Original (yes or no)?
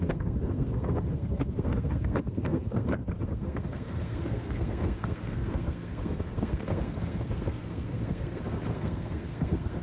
no